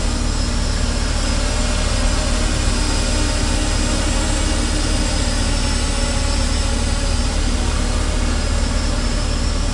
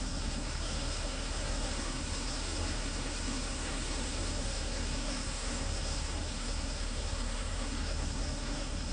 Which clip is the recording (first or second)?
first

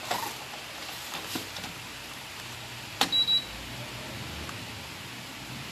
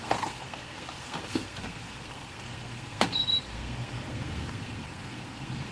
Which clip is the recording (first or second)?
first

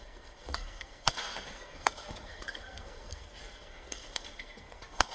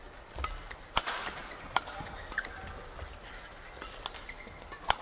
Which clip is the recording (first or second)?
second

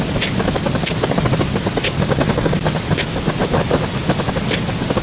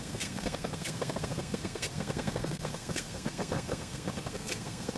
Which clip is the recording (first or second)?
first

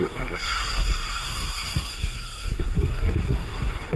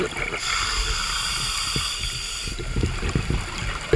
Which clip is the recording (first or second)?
second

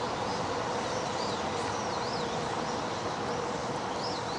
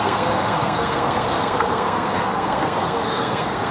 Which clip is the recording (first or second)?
first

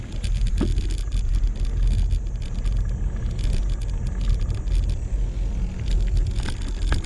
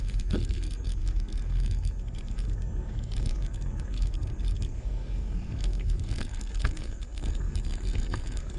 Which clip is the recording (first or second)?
first